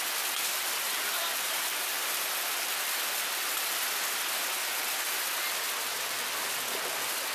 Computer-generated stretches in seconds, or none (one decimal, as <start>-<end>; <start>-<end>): none